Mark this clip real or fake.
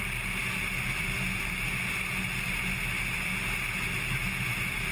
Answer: real